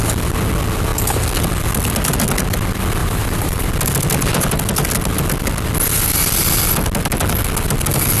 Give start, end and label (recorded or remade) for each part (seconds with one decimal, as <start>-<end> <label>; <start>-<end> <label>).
0.0-3.0 recorded; 3.0-3.7 remade; 3.7-8.2 recorded